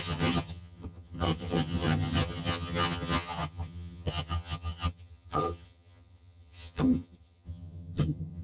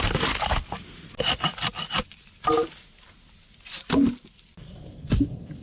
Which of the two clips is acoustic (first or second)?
second